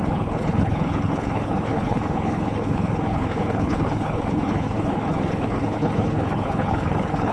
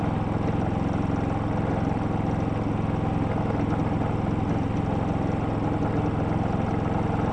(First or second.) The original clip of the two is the second